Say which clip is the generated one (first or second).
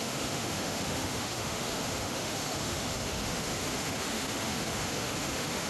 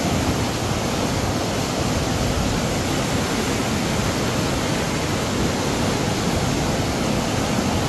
first